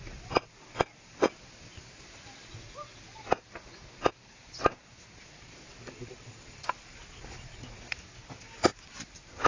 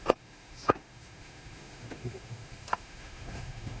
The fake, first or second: second